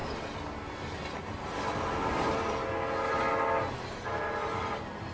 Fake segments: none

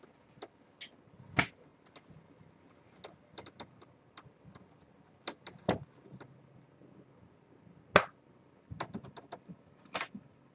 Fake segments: none

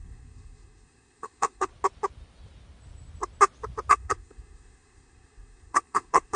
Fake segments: 0.0-1.7 (codec, SNAC); 3.9-6.4

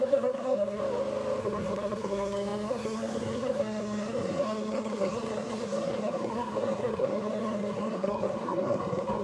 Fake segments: 0.0-0.8 (codec, SNAC); 1.4-9.2

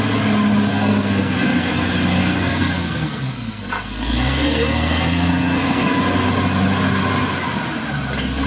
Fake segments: 0.7-1.7 (codec, SNAC); 2.2-6.0